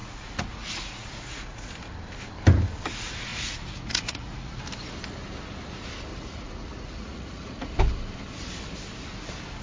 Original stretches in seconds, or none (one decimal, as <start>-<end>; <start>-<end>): 1.7-3.3; 4.6-6.1; 7.7-9.6